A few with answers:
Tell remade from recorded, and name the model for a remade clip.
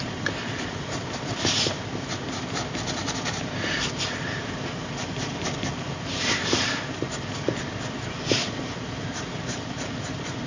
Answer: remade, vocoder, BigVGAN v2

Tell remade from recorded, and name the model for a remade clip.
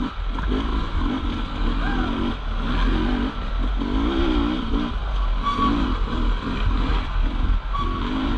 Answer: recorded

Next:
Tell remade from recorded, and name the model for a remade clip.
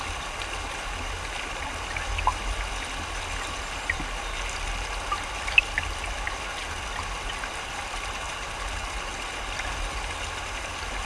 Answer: recorded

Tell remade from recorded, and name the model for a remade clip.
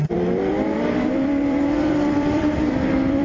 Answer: remade, vocoder, BigVGAN v2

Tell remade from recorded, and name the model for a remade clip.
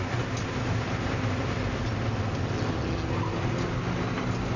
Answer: recorded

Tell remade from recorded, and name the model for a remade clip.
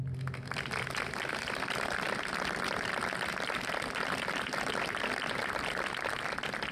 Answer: recorded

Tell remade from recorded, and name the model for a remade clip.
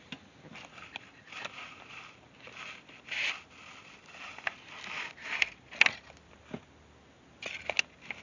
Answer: recorded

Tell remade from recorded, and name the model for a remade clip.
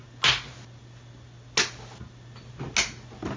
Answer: recorded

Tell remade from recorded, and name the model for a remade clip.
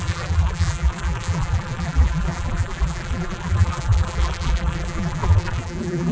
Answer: remade, vocoder, BigVGAN v2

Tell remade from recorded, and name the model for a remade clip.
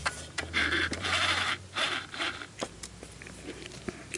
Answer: remade, vocoder, BigVGAN v2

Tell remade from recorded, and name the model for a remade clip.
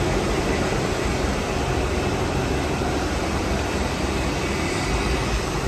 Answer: remade, vocoder, BigVGAN v2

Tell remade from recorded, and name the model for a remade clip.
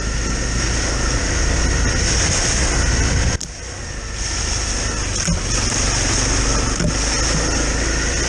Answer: recorded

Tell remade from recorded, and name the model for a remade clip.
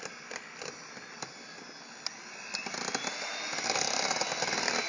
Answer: recorded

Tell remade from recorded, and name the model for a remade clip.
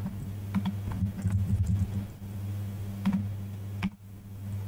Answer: recorded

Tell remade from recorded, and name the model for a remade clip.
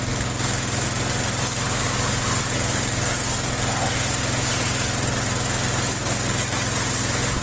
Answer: recorded